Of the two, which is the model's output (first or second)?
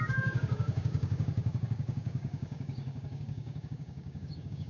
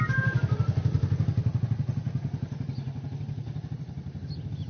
first